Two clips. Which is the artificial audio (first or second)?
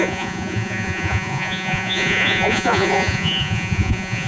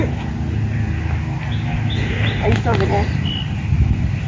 first